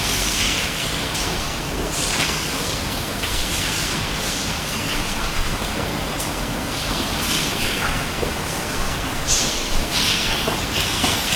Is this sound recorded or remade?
remade